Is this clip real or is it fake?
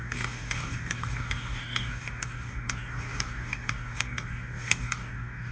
fake